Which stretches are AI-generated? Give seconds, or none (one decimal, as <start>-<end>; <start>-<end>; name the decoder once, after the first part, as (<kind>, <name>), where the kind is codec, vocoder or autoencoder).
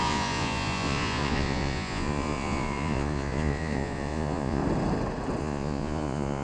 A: 0.0-4.6 (vocoder, Vocos); 5.4-6.4